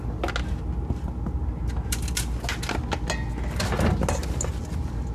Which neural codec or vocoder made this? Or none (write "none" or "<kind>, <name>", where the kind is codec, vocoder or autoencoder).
none